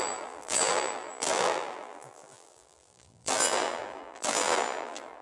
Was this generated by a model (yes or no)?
yes